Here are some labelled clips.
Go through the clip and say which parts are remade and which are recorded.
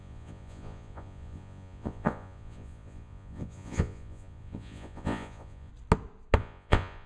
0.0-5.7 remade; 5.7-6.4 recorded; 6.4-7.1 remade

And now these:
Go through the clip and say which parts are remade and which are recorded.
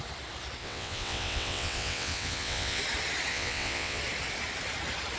0.0-0.6 recorded; 0.6-2.8 remade; 2.8-3.3 recorded; 3.3-4.0 remade; 4.0-5.2 recorded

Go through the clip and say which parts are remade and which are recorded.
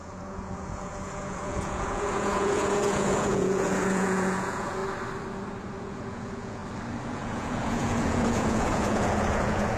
0.0-4.8 remade; 4.8-5.8 recorded; 5.8-6.6 remade; 6.6-7.1 recorded; 7.1-9.8 remade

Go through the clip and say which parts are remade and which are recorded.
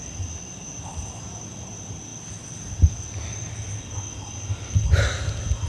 0.0-5.7 recorded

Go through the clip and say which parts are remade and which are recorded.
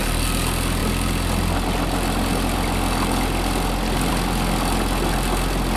0.0-5.8 recorded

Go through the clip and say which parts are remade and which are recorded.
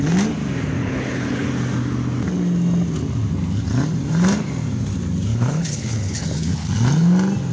0.0-0.8 recorded; 0.8-1.5 remade; 1.5-5.3 recorded; 5.3-6.7 remade; 6.7-7.5 recorded